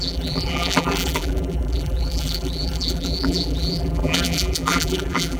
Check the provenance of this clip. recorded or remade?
remade